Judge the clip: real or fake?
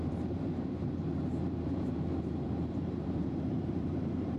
fake